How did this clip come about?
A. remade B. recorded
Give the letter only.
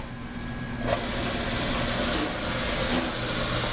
B